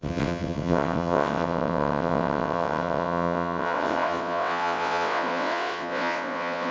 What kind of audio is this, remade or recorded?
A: remade